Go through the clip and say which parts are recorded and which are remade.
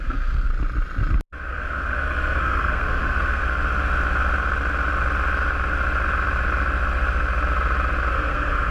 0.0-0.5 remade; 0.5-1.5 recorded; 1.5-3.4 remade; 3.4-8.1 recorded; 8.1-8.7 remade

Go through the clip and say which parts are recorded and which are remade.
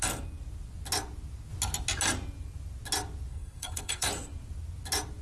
0.0-3.3 recorded; 3.3-4.1 remade; 4.1-5.2 recorded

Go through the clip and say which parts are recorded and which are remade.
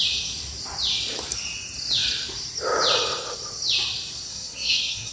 0.0-4.3 recorded; 4.3-5.1 remade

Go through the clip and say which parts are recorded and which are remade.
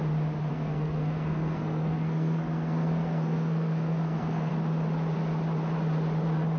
0.0-0.5 recorded; 0.5-4.5 remade; 4.5-6.6 recorded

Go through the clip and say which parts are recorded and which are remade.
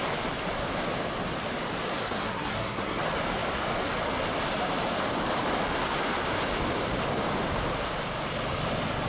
0.0-2.0 recorded; 2.0-3.0 remade; 3.0-9.1 recorded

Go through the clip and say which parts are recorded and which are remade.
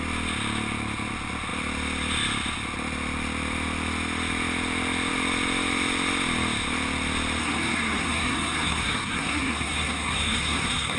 0.0-7.4 recorded; 7.4-11.0 remade